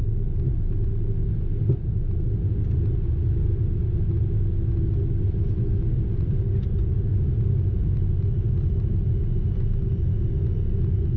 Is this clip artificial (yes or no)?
no